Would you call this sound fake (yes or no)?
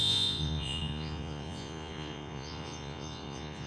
yes